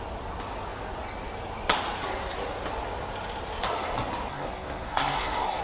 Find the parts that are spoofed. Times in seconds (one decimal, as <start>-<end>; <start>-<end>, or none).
4.3-5.6